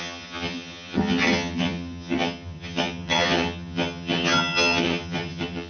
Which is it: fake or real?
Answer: fake